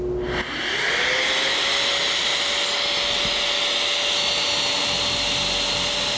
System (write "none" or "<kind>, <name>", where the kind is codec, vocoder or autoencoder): none